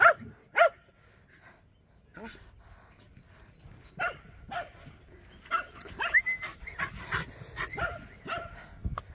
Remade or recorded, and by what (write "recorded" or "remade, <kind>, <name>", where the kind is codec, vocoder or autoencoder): recorded